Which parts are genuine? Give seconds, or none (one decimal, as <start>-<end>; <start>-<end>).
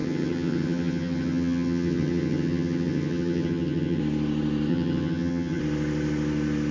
4.0-4.7; 5.6-6.7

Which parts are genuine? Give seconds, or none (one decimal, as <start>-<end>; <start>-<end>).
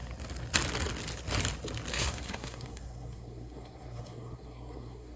0.0-1.9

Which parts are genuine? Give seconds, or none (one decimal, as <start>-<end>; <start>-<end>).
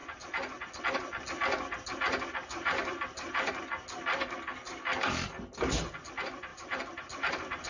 0.0-2.3; 3.5-6.5